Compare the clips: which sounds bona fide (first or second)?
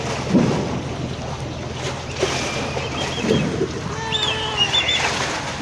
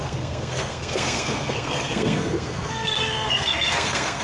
first